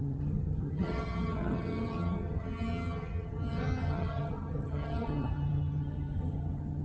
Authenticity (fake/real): fake